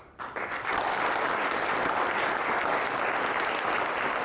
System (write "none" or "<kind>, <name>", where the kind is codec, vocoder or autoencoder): none